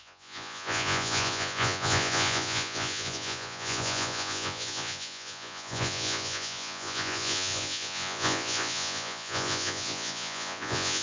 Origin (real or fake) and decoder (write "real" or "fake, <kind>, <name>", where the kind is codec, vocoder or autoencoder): fake, vocoder, Vocos